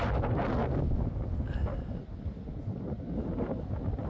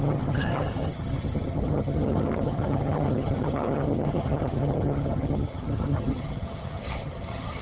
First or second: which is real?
first